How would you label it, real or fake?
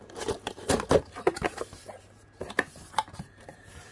fake